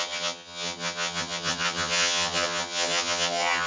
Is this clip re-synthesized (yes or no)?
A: yes